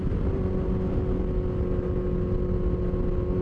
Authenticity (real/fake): real